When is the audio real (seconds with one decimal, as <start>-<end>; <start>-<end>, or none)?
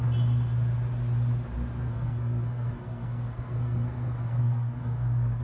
0.0-1.9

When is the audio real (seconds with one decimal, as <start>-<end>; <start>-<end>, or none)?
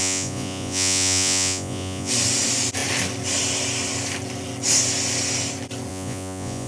2.1-5.9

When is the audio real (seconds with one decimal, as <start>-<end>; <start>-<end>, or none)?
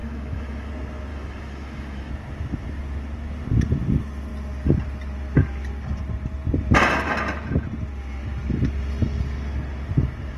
0.7-1.1; 2.1-10.4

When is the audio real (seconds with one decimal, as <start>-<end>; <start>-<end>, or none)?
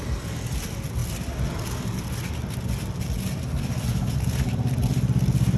0.0-5.6